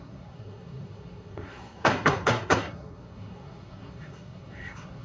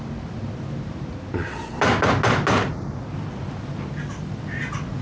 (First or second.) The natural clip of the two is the second